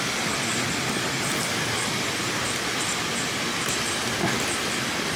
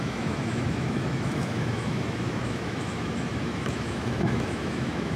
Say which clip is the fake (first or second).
second